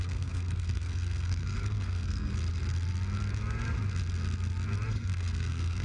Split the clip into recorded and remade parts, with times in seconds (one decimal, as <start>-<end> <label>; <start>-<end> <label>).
0.0-2.3 remade; 2.3-4.9 recorded; 4.9-5.8 remade

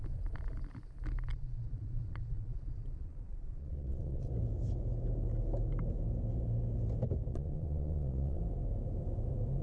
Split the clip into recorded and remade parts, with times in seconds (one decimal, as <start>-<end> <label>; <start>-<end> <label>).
0.0-1.3 recorded; 1.3-4.3 remade; 4.3-7.3 recorded; 7.3-8.4 remade; 8.4-9.6 recorded